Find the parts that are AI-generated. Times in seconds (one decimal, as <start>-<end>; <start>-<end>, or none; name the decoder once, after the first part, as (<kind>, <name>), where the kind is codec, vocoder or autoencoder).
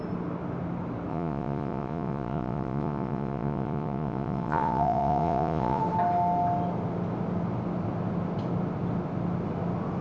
1.1-5.8 (vocoder, Vocos)